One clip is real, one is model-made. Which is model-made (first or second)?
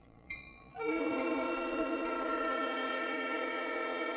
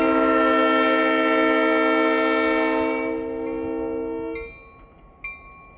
first